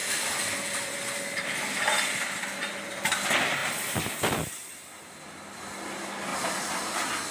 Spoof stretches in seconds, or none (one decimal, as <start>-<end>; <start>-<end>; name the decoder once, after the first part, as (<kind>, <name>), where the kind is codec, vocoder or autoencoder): 0.0-1.5 (vocoder, BigVGAN v2); 2.1-3.0; 3.6-5.7; 6.3-7.3